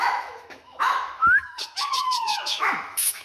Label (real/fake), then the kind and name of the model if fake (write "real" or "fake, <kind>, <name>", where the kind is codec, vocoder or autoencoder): fake, autoencoder, DAC-VAE